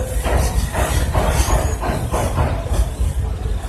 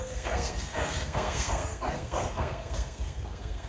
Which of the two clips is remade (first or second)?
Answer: second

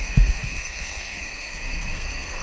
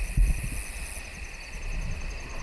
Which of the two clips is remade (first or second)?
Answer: first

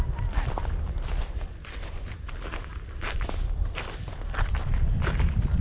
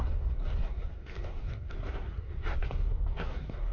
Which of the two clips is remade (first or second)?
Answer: second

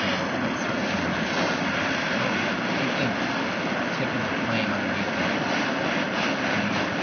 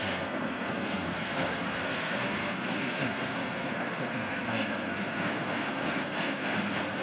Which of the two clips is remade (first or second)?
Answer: second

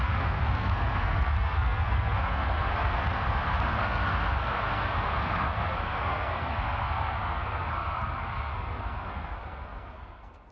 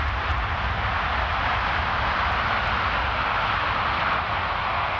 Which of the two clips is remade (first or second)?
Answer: first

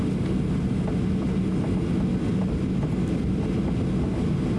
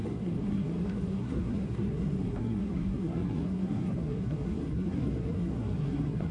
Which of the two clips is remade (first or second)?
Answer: second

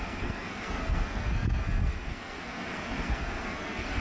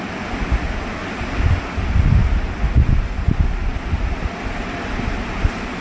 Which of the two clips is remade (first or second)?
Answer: first